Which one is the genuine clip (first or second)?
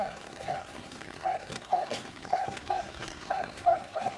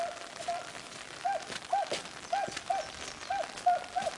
second